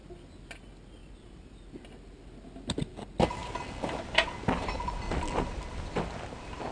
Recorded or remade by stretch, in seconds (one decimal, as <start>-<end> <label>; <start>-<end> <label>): 0.0-1.0 recorded; 1.0-1.8 remade; 1.8-6.7 recorded